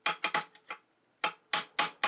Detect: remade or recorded recorded